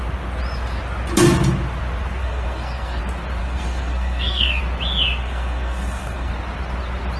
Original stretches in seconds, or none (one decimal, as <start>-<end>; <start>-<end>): 0.0-2.2; 3.0-3.4; 4.6-5.2; 6.3-7.2